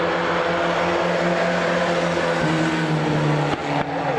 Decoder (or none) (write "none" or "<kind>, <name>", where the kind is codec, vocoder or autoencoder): none